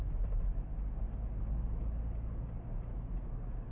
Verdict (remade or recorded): recorded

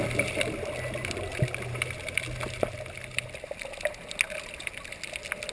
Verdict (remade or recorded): recorded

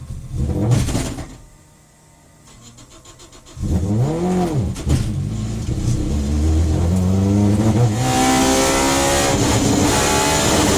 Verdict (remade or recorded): recorded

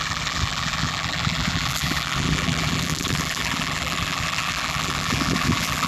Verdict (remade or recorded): remade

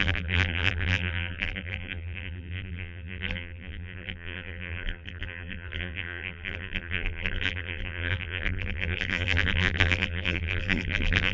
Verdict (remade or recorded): remade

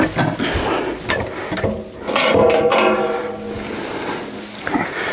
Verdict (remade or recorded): recorded